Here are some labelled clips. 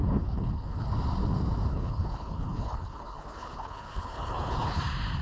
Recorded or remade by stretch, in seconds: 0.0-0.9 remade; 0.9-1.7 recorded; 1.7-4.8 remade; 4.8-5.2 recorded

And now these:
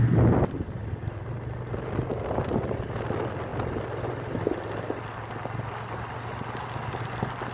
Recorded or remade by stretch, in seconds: 0.0-7.5 recorded

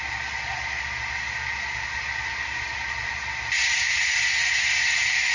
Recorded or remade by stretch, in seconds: 0.0-5.3 recorded

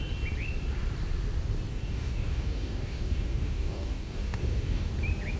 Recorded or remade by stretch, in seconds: 0.0-1.7 recorded; 1.7-4.9 remade; 4.9-5.4 recorded

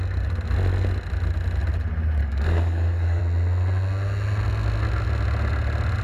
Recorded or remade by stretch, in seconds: 0.0-2.2 recorded; 2.2-3.2 remade; 3.2-6.0 recorded

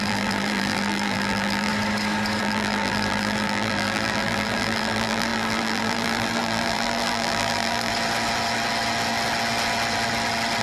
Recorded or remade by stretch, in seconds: 0.0-1.7 remade; 1.7-2.4 recorded; 2.4-7.9 remade; 7.9-10.6 recorded

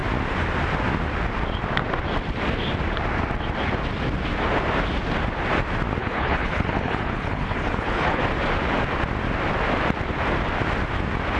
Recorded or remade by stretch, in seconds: 0.0-6.0 recorded; 6.0-8.2 remade; 8.2-11.4 recorded